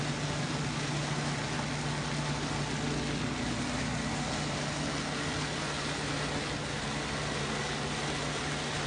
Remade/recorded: recorded